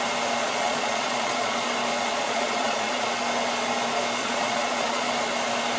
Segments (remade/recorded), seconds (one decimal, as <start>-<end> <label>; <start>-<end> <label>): 0.0-0.4 recorded; 0.4-1.7 remade; 1.7-2.1 recorded; 2.1-3.1 remade; 3.1-4.2 recorded; 4.2-5.1 remade; 5.1-5.8 recorded